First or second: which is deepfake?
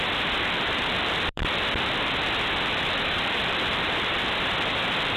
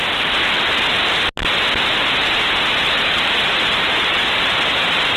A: first